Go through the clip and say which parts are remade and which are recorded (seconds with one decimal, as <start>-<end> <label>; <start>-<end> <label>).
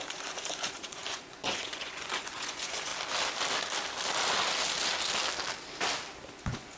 0.0-2.9 remade; 2.9-6.3 recorded; 6.3-6.8 remade